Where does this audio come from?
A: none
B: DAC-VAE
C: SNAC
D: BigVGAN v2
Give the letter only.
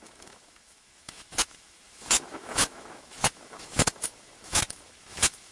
B